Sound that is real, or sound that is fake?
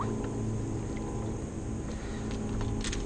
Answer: real